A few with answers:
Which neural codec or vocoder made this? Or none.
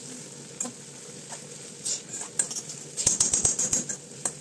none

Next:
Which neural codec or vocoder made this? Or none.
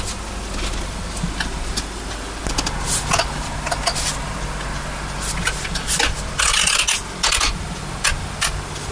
none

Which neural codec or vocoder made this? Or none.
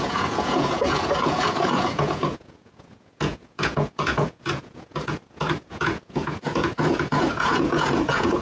vocoder, Vocos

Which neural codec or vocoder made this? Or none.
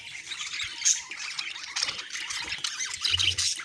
none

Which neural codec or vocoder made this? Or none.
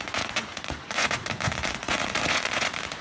vocoder, Vocos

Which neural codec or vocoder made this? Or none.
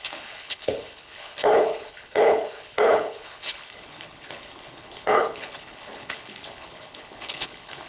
codec, HILCodec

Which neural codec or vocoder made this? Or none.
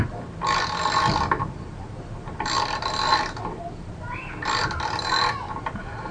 none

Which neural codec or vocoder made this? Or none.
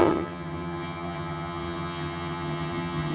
vocoder, HiFi-GAN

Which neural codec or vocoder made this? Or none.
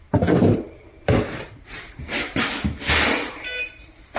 vocoder, BigVGAN v2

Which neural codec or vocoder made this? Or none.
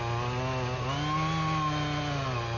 none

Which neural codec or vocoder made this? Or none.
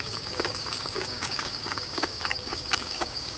codec, DAC